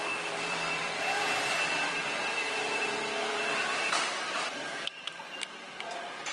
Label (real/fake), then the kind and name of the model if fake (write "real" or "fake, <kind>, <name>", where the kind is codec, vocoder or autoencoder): fake, vocoder, BigVGAN v2